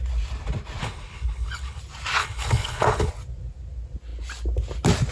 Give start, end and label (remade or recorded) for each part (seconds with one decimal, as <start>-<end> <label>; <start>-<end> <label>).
0.0-0.8 recorded; 0.8-1.8 remade; 1.8-2.2 recorded; 2.2-3.1 remade; 3.1-5.1 recorded